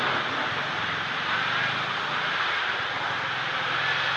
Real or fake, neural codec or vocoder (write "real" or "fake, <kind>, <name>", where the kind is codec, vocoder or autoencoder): real